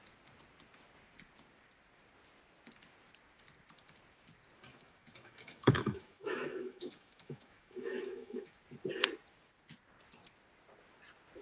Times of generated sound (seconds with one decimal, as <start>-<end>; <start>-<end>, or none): 4.7-8.6